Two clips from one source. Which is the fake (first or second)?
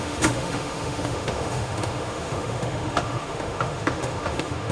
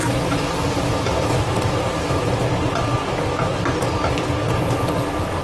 first